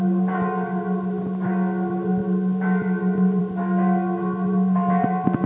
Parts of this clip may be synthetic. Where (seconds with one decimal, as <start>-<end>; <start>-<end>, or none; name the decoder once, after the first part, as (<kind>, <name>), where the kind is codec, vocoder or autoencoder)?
none